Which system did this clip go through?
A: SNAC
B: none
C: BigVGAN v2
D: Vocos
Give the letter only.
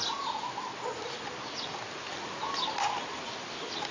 B